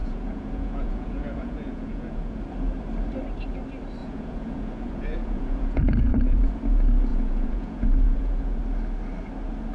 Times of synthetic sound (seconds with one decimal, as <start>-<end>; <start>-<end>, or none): 0.0-2.4; 4.0-6.6; 7.1-8.6